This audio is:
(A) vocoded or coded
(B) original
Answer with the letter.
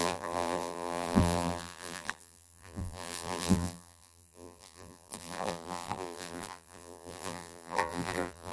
A